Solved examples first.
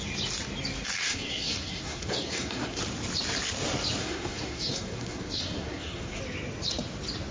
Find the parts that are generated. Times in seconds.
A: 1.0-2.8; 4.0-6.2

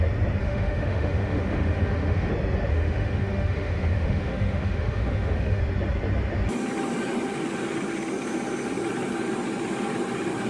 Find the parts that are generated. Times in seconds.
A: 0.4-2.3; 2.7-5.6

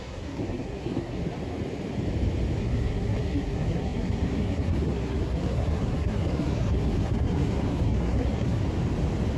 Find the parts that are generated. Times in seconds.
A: 0.0-1.2; 2.6-8.6

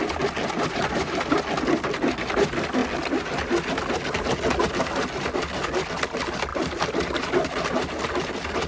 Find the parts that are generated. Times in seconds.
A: none